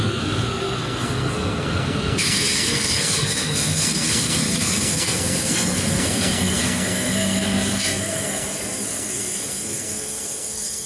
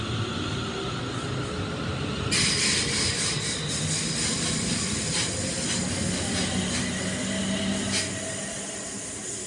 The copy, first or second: first